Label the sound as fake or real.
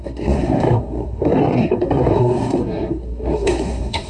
fake